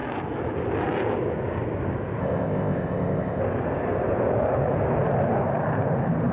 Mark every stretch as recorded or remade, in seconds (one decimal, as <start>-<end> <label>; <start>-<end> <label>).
0.0-2.2 recorded; 2.2-3.4 remade; 3.4-6.3 recorded